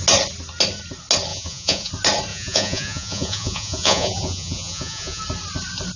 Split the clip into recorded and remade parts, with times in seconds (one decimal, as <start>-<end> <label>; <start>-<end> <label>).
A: 0.0-1.3 recorded; 1.3-1.9 remade; 1.9-2.3 recorded; 2.3-5.2 remade; 5.2-6.0 recorded